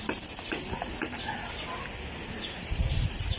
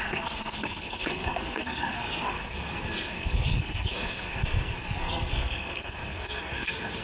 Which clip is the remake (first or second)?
second